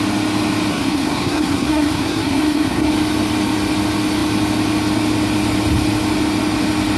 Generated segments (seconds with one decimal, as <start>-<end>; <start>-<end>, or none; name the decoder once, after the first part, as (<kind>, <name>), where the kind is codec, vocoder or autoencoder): 0.7-2.9 (codec, SNAC)